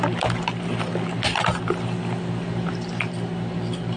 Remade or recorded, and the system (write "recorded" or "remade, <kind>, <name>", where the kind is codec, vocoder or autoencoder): recorded